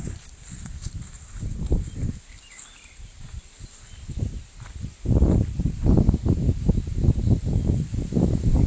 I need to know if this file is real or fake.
real